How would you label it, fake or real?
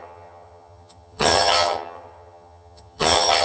fake